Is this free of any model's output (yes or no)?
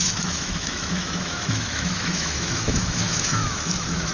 no